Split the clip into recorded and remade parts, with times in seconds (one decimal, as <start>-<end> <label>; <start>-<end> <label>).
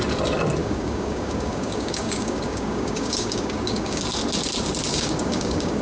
0.0-0.6 recorded; 0.6-4.0 remade; 4.0-4.9 recorded; 4.9-5.8 remade